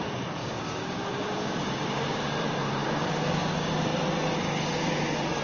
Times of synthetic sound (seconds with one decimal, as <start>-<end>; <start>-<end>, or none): 0.4-2.2; 2.8-3.7; 4.4-5.0